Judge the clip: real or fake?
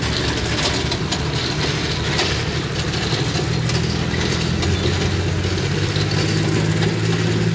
real